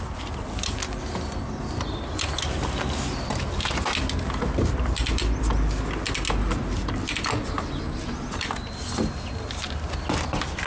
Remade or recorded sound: recorded